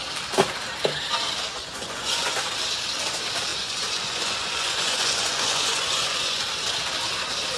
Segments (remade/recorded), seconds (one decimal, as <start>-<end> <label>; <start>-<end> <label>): 0.0-1.5 recorded; 1.5-2.4 remade; 2.4-3.5 recorded; 3.5-6.5 remade; 6.5-7.6 recorded

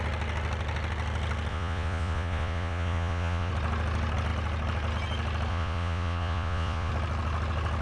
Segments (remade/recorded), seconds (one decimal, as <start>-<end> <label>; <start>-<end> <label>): 0.0-1.5 recorded; 1.5-3.5 remade; 3.5-5.5 recorded; 5.5-6.9 remade; 6.9-7.8 recorded